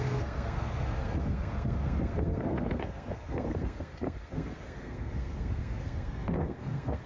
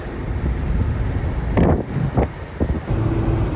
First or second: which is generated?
first